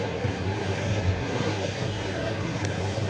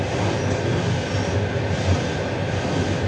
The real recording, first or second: second